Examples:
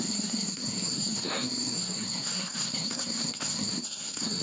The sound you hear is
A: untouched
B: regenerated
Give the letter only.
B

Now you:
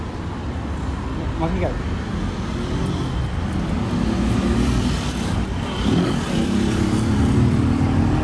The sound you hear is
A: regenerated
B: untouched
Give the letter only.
A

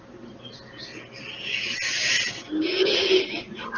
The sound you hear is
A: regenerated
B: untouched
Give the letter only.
B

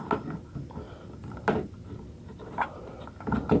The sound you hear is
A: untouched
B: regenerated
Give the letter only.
A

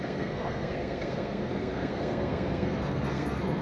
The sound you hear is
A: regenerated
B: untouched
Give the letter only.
A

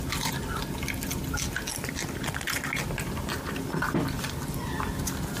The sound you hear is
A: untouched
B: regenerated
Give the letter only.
A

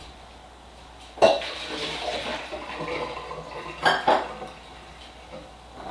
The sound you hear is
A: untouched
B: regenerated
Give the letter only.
A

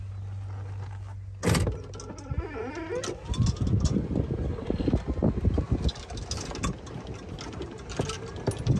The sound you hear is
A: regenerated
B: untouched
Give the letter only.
B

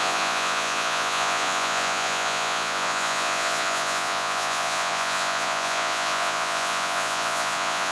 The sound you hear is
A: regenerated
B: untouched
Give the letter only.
A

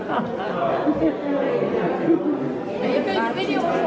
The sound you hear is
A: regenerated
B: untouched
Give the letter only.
B